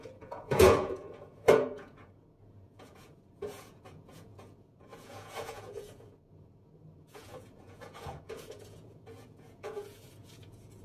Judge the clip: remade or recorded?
remade